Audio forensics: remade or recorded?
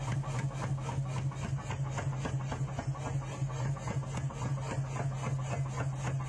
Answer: recorded